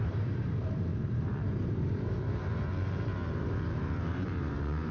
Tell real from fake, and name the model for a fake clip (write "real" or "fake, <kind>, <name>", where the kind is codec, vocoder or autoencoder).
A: fake, vocoder, BigVGAN v2